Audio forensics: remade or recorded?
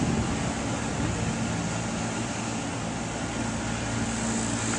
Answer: recorded